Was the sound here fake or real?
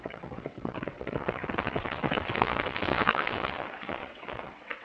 fake